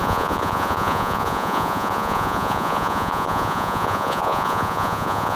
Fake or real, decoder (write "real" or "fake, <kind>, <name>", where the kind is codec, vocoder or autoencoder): fake, vocoder, Vocos